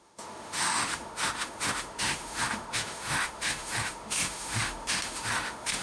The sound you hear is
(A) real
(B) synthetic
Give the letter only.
B